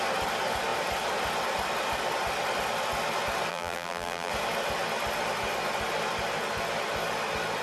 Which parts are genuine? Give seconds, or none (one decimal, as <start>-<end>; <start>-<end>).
0.0-3.5; 4.3-7.6